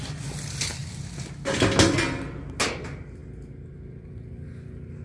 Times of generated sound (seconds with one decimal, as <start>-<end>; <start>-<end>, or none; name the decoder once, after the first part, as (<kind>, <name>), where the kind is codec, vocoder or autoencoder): none